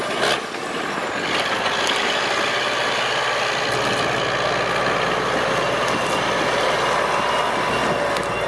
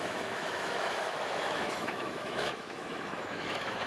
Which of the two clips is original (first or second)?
first